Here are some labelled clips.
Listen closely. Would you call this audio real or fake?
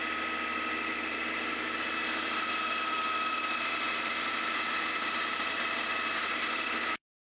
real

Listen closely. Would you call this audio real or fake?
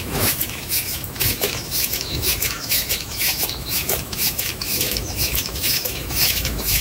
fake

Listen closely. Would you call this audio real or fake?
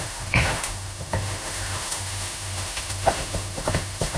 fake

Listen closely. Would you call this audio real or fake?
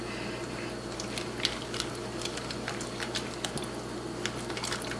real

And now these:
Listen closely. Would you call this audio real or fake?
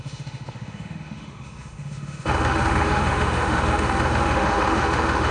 fake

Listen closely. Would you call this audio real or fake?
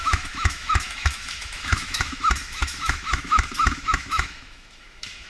fake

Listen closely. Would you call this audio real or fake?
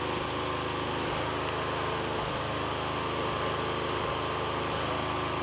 real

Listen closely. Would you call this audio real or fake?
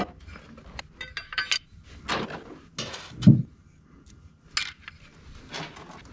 real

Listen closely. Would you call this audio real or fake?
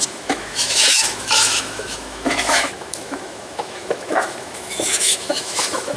fake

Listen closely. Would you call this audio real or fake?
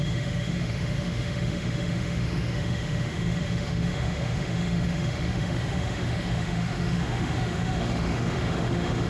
fake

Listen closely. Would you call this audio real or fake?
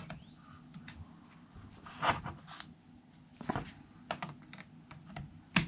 real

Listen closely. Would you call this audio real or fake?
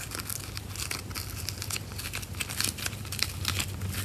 real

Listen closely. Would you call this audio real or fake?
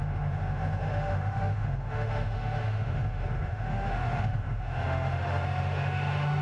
fake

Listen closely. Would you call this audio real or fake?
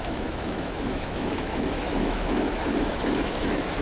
fake